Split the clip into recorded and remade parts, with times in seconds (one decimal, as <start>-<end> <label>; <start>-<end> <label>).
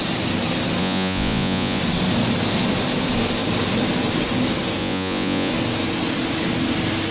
0.0-0.8 recorded; 0.8-1.8 remade; 1.8-4.8 recorded; 4.8-5.5 remade; 5.5-7.1 recorded